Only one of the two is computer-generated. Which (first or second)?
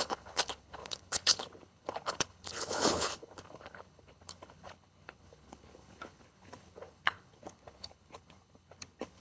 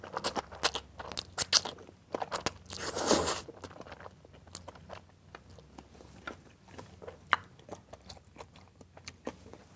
first